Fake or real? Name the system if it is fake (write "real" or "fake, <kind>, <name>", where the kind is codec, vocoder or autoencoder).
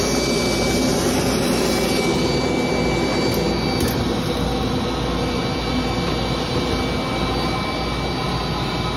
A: real